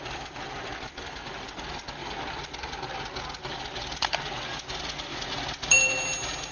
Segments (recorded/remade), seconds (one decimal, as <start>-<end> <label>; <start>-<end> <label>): 0.0-5.1 recorded; 5.1-5.8 remade; 5.8-6.5 recorded